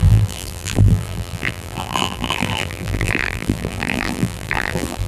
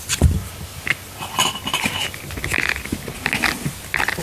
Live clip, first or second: second